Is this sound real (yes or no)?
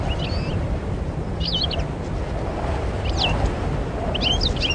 yes